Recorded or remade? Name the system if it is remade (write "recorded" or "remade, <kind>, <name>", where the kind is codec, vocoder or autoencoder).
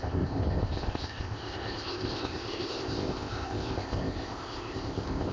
remade, codec, ZipCodec